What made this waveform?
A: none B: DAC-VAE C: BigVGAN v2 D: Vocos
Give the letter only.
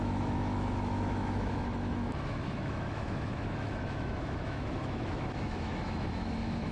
B